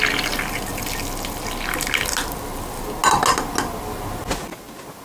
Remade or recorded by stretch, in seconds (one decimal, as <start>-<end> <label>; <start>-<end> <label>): 0.0-5.0 recorded